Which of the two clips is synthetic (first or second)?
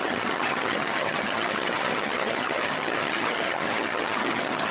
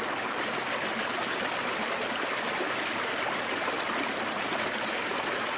first